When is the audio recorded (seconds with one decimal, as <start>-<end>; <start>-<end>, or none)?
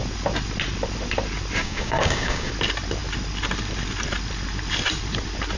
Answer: 0.0-1.6; 2.5-5.6